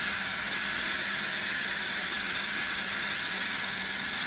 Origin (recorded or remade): remade